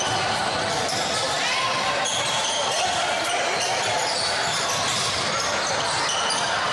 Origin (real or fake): real